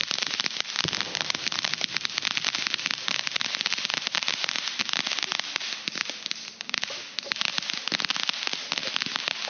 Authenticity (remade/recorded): recorded